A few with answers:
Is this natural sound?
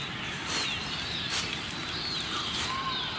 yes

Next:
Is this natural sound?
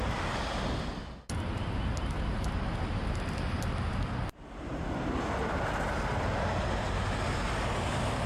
yes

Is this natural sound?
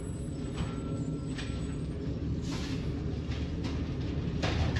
yes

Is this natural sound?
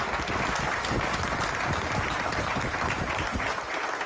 yes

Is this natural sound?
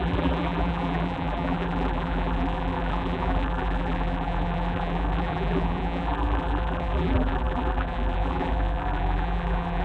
no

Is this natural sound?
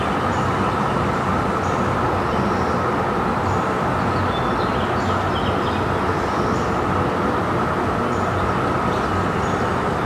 yes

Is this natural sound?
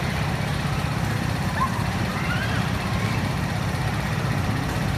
no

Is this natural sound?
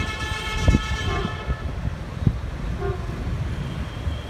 yes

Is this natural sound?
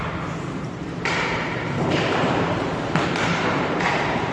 no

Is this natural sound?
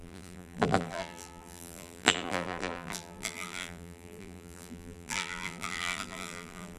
no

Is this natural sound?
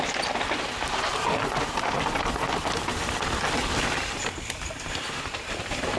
yes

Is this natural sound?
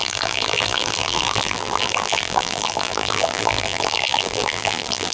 no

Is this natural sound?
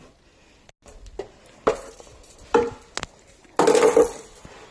yes